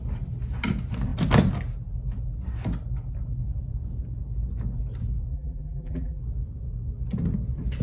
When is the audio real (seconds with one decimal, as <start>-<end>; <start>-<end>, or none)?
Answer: 0.0-5.3; 6.2-7.8